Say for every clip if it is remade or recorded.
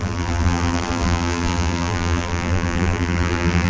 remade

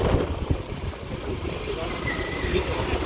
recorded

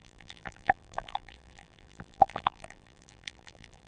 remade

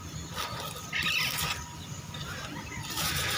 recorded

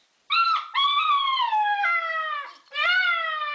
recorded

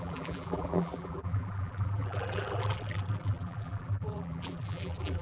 remade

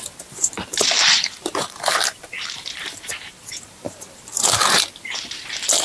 remade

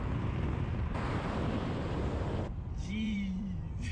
remade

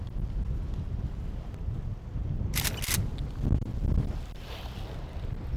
recorded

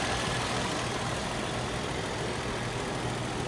recorded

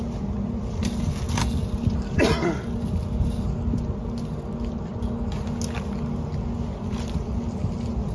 recorded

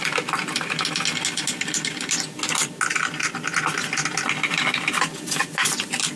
recorded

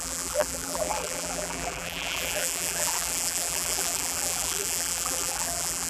remade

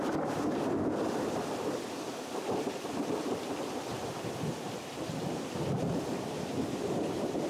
remade